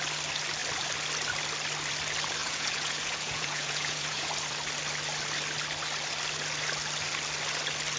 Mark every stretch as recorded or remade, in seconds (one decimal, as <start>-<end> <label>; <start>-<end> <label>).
0.0-2.4 recorded; 2.4-4.3 remade; 4.3-8.0 recorded

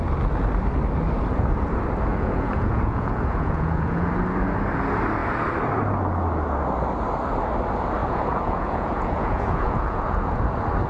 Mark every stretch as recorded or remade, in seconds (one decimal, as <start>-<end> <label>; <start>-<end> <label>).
0.0-2.1 recorded; 2.1-4.1 remade; 4.1-8.0 recorded; 8.0-10.4 remade; 10.4-10.9 recorded